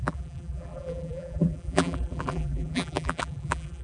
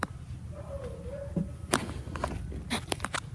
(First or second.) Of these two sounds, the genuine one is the second